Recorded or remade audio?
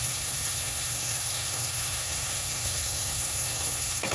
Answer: remade